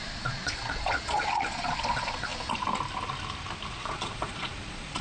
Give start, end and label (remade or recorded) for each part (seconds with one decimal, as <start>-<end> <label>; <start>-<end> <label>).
0.0-2.3 remade; 2.3-3.7 recorded; 3.7-5.0 remade